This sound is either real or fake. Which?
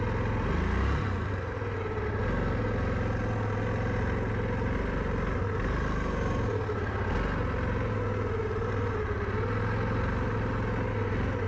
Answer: real